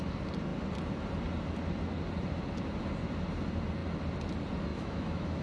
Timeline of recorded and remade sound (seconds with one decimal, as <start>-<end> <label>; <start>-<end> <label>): 0.0-4.7 recorded; 4.7-5.4 remade